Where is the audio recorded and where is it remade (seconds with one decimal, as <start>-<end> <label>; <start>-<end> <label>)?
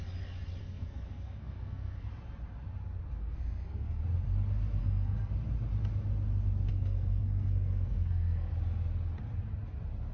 0.0-0.6 recorded; 0.6-2.1 remade; 2.1-3.2 recorded; 3.2-4.0 remade; 4.0-4.8 recorded; 4.8-5.3 remade; 5.3-6.7 recorded; 6.7-8.5 remade; 8.5-10.1 recorded